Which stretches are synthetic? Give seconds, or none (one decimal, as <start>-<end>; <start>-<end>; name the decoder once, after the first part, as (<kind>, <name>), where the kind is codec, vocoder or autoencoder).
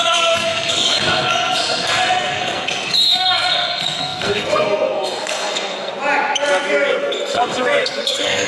0.0-5.9 (codec, SNAC); 7.0-8.5